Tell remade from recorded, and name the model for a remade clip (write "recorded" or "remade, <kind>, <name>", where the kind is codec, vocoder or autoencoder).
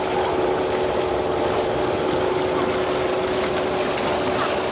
recorded